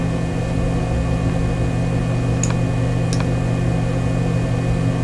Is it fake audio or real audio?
real